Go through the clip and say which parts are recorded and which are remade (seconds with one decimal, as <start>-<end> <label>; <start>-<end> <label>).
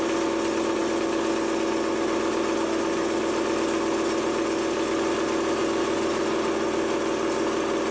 0.0-7.9 recorded